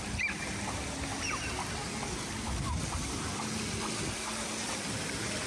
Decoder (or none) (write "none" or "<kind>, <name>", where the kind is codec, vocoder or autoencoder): none